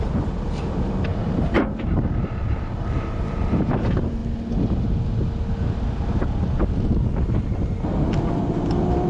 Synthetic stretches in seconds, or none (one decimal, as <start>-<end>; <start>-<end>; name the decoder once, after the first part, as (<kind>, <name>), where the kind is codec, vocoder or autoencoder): 0.0-4.2 (vocoder, BigVGAN v2); 8.4-9.1